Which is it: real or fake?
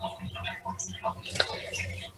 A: real